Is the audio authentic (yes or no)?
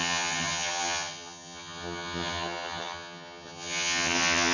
no